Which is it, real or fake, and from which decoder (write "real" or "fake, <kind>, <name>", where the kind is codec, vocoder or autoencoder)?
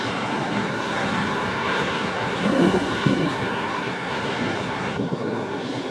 fake, codec, SNAC